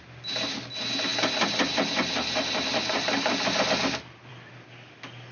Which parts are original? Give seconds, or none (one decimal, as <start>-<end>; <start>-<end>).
0.0-5.3